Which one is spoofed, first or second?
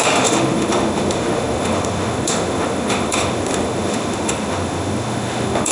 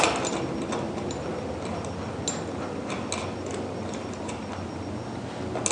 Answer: first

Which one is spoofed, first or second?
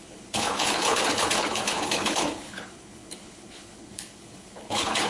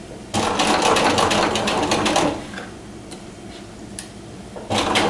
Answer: first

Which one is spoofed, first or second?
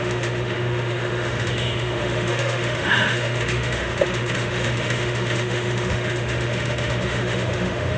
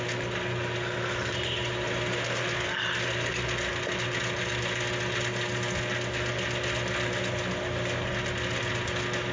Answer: first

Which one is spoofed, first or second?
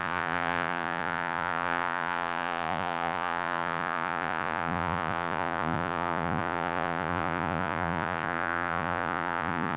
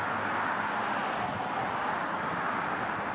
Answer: first